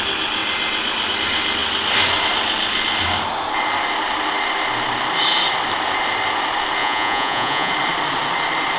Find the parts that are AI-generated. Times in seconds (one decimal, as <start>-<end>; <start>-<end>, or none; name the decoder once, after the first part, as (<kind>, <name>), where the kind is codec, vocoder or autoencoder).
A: 6.8-7.7 (vocoder, Vocos)